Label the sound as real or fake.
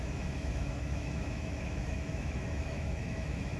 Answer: fake